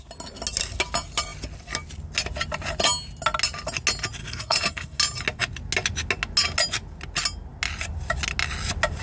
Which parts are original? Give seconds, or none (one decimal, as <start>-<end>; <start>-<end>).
0.0-4.2; 5.0-9.0